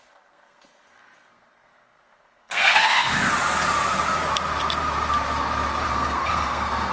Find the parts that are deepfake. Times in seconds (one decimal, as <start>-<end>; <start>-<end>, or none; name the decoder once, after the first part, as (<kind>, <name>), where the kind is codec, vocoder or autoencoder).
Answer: 0.0-3.1 (codec, SNAC); 5.9-6.9